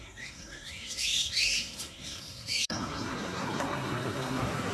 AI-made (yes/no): yes